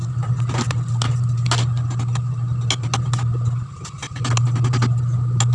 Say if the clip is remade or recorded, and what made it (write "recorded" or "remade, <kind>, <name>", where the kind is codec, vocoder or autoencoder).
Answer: recorded